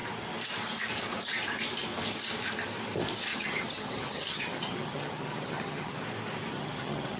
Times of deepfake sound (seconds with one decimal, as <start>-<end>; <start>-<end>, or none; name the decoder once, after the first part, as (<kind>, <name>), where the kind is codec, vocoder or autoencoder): 3.3-6.0 (vocoder, HiFi-GAN); 6.5-7.2